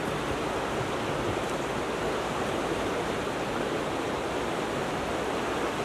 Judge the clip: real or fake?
real